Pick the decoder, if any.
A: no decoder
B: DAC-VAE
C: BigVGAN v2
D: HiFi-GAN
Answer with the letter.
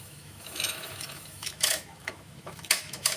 B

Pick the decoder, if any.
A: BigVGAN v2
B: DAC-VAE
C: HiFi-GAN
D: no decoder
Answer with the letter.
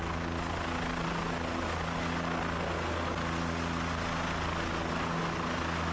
D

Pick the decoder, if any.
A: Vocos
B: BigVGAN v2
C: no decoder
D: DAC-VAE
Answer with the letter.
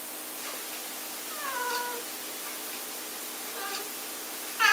C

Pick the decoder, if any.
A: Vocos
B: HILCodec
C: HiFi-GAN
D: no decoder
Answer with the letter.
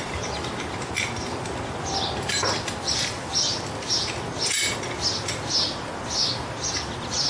D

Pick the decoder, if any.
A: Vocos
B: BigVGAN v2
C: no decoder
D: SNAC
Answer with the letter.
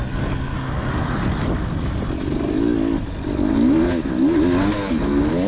C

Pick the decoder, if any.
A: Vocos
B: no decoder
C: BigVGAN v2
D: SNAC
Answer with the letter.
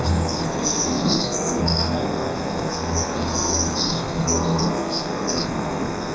D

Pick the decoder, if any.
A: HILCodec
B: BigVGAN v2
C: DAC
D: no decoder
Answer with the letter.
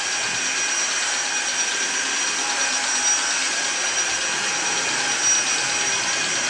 D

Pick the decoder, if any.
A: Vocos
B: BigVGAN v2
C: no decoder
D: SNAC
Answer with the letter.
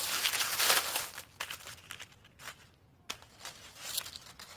C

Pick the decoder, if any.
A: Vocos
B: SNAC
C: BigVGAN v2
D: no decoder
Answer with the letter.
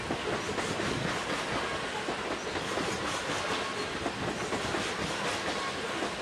D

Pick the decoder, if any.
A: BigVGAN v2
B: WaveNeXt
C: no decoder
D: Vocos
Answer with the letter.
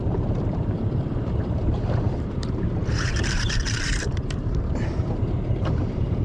A